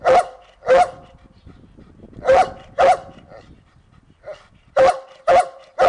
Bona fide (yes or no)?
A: yes